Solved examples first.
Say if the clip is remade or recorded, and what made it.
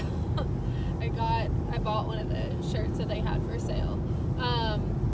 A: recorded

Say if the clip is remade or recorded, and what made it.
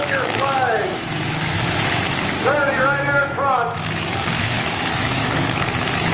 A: remade, autoencoder, DAC-VAE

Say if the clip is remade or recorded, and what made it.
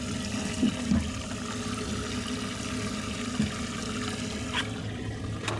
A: recorded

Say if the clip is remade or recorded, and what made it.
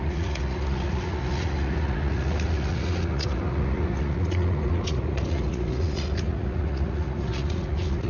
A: remade, vocoder, Vocos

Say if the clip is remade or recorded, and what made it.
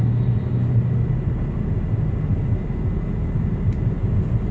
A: recorded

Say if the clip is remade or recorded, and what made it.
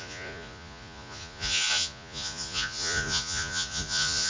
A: remade, vocoder, Vocos